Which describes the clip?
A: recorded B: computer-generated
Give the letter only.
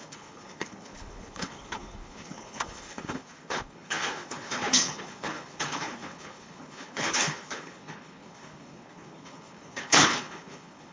B